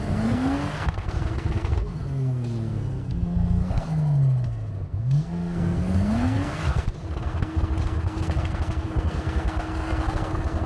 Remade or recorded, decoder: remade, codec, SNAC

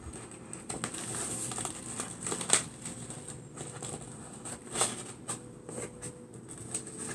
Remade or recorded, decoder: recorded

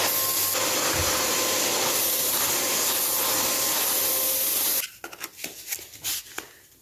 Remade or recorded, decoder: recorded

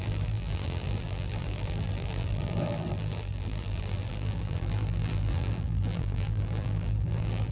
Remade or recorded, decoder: remade, vocoder, BigVGAN v2